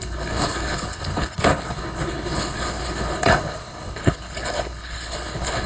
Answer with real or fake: fake